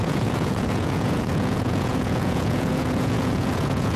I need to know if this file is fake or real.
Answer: fake